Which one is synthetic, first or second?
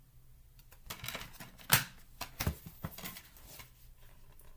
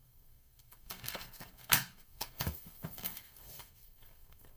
second